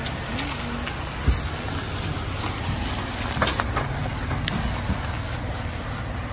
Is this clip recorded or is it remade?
recorded